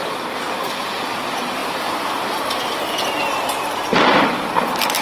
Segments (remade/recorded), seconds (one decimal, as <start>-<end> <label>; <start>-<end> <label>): 0.0-1.6 recorded; 1.6-2.8 remade; 2.8-5.0 recorded